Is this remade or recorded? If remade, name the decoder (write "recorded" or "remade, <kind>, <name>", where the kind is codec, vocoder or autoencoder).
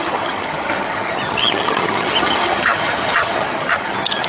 remade, vocoder, HiFi-GAN